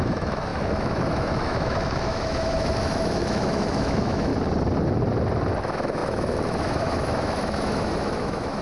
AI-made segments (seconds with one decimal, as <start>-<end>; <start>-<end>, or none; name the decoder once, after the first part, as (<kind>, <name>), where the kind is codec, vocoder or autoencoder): 0.0-4.3 (autoencoder, DAC-VAE); 5.6-8.6